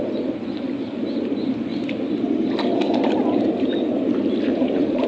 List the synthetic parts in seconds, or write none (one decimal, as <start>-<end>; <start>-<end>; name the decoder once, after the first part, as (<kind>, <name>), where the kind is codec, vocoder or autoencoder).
4.5-5.1 (vocoder, Vocos)